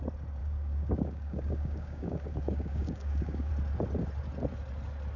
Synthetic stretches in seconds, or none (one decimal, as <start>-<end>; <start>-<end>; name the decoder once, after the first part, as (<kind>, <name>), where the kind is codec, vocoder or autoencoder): 0.4-3.5 (codec, DAC)